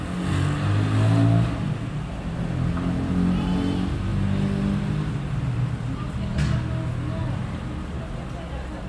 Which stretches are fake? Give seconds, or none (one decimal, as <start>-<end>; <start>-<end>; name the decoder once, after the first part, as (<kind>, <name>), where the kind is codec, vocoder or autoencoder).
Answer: none